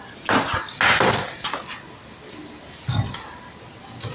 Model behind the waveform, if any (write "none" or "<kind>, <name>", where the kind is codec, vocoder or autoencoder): none